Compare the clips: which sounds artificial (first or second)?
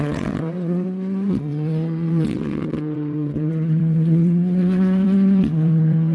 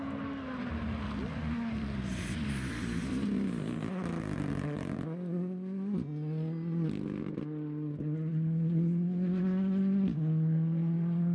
first